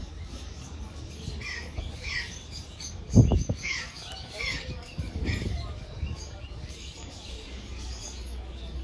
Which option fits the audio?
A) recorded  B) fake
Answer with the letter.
B